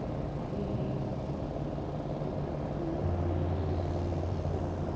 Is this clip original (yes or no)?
yes